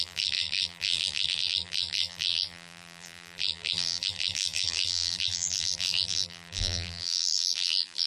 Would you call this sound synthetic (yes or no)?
yes